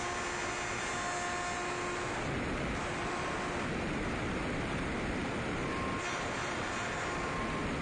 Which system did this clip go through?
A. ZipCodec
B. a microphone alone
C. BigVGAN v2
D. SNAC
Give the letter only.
B